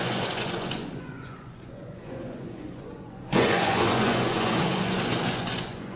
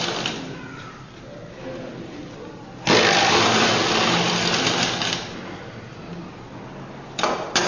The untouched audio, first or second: second